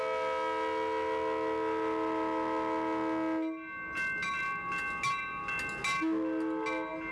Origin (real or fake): real